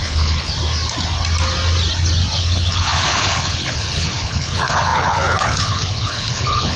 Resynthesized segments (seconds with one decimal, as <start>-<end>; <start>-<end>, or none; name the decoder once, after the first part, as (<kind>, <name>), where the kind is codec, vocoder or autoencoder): 0.0-0.5 (codec, HILCodec); 2.4-6.8